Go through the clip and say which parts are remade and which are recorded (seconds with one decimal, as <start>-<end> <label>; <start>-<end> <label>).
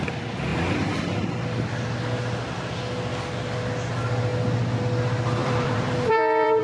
0.0-5.4 recorded; 5.4-6.6 remade